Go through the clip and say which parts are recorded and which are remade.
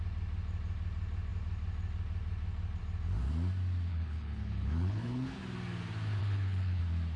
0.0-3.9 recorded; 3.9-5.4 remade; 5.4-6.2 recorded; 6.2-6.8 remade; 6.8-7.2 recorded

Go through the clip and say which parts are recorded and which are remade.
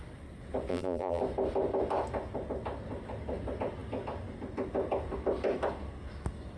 0.0-0.7 recorded; 0.7-1.2 remade; 1.2-6.6 recorded